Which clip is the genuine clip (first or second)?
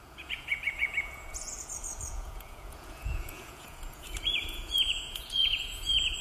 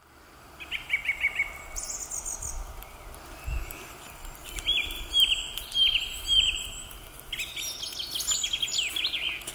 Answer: second